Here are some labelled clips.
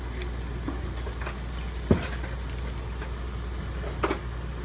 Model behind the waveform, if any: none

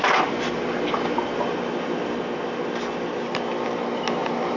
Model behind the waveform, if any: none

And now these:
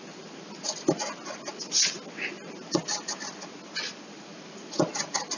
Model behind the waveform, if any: none